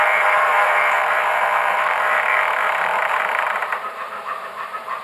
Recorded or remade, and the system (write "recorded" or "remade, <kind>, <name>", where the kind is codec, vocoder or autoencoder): remade, vocoder, BigVGAN v2